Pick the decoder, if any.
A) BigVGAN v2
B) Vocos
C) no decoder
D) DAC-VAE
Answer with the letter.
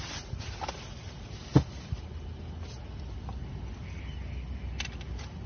C